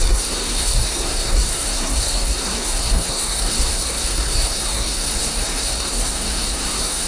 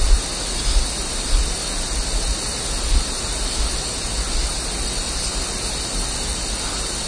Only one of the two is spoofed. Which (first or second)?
first